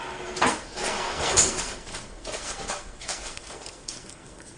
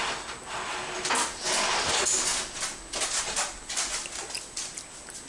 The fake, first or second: first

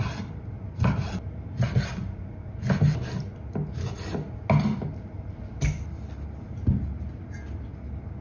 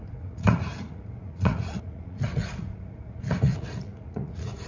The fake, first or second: second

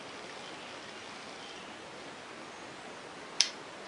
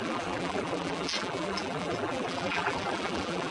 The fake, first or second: second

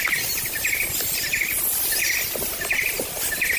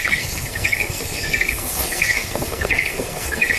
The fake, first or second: second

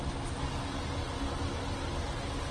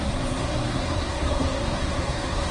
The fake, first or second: second